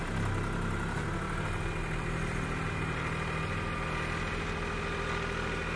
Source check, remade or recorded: recorded